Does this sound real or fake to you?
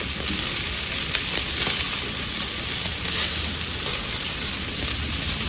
real